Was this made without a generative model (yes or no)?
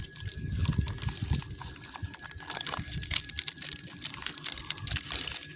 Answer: no